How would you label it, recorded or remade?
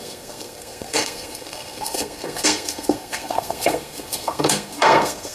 remade